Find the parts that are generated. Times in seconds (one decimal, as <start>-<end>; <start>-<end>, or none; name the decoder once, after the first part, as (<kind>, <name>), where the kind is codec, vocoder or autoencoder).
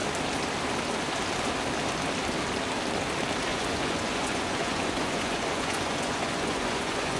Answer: 3.5-7.2 (vocoder, Vocos)